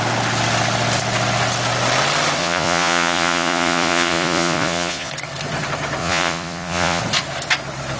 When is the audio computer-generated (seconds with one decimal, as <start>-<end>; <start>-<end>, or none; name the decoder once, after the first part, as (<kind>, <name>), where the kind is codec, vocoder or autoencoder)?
2.4-5.1 (vocoder, Vocos); 6.0-7.0